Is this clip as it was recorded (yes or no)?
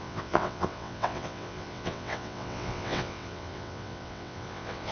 no